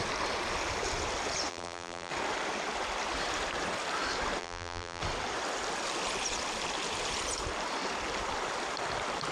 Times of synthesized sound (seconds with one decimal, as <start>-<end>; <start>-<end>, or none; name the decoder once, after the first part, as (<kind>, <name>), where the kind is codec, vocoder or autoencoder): 1.5-2.1 (vocoder, BigVGAN v2); 4.4-5.0